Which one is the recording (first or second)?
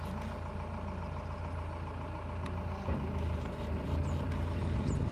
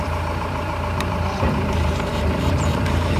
first